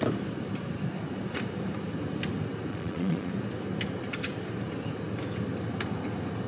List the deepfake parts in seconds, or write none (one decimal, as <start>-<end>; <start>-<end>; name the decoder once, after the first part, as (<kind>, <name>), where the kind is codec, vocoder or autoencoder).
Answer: 2.7-3.3 (vocoder, Vocos)